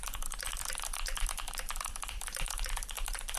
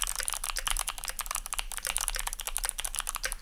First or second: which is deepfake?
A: first